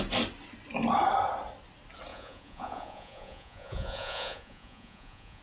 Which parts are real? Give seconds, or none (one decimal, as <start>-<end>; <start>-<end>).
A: 0.0-2.1